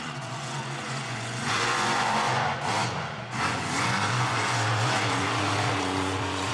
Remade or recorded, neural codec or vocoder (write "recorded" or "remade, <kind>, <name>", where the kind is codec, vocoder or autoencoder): remade, vocoder, Vocos